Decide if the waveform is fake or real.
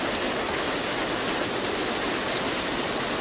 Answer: real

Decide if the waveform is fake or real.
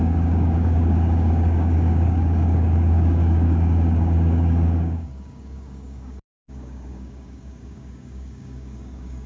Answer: fake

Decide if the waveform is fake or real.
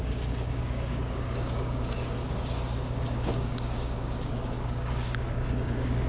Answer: fake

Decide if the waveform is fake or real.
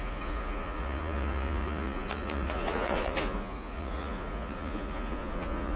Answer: fake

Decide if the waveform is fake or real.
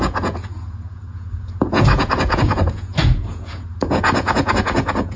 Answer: fake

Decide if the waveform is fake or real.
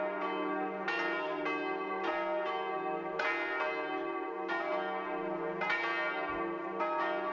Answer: real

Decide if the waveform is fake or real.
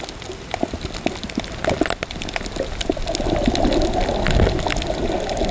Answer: real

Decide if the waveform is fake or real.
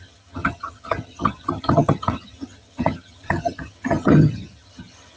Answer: fake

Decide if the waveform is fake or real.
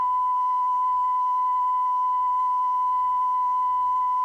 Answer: fake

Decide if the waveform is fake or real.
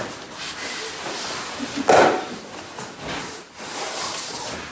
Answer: real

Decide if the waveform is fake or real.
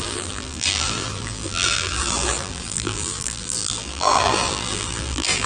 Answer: fake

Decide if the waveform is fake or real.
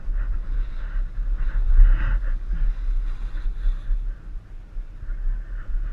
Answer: real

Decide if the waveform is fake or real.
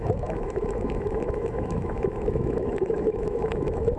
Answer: fake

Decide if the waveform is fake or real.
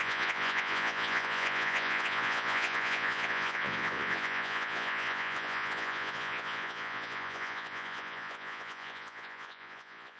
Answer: fake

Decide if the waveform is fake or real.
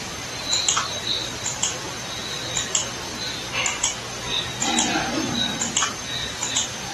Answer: real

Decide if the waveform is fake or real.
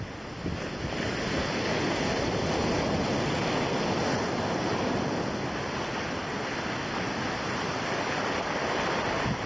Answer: real